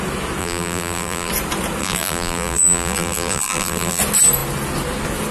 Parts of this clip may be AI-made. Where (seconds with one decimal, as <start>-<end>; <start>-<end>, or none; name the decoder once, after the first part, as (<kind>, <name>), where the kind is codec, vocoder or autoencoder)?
0.4-1.3 (vocoder, BigVGAN v2); 1.8-4.0